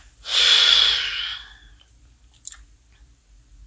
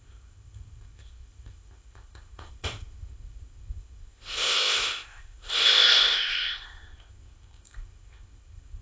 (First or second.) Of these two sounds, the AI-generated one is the second